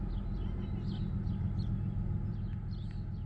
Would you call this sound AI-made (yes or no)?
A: no